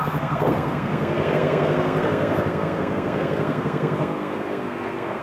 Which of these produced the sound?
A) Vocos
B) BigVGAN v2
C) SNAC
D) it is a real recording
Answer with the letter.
C